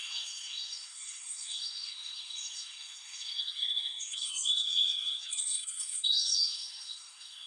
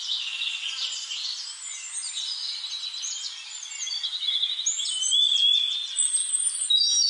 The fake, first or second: first